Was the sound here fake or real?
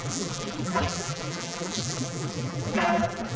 fake